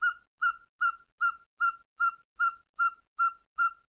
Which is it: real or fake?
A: real